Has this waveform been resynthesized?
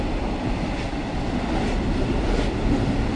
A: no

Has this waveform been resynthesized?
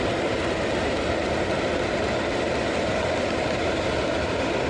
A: no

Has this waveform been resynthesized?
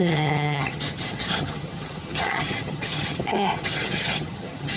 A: yes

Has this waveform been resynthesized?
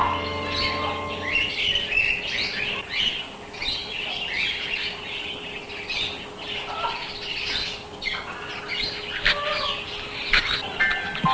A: no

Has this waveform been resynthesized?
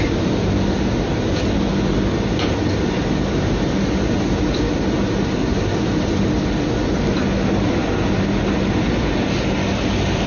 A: no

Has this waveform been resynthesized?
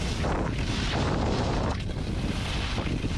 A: no